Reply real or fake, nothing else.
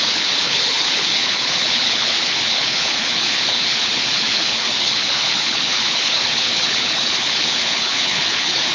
fake